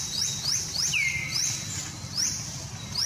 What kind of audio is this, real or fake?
real